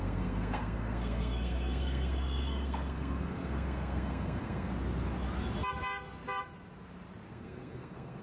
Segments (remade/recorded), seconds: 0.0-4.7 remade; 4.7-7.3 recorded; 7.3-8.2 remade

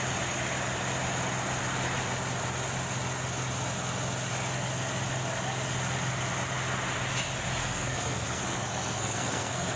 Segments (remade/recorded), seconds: 0.0-7.6 recorded; 7.6-9.8 remade

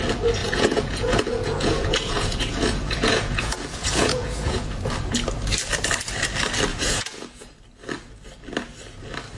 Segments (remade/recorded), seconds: 0.0-0.4 recorded; 0.4-4.9 remade; 4.9-6.7 recorded; 6.7-7.5 remade; 7.5-9.4 recorded

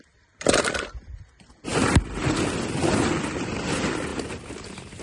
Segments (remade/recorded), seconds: 0.0-4.1 remade; 4.1-5.0 recorded

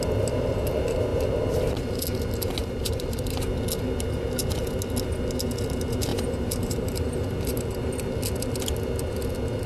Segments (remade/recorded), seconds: 0.0-2.6 recorded; 2.6-3.4 remade; 3.4-6.1 recorded; 6.1-7.7 remade; 7.7-9.7 recorded

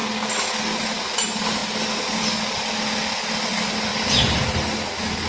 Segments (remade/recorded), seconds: 0.0-5.3 recorded

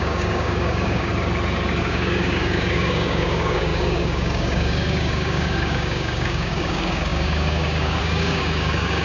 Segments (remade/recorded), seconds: 0.0-1.1 remade; 1.1-1.8 recorded; 1.8-9.0 remade

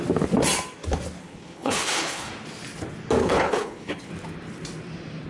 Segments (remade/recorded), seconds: 0.0-1.2 recorded; 1.2-2.3 remade; 2.3-3.2 recorded; 3.2-4.1 remade; 4.1-5.3 recorded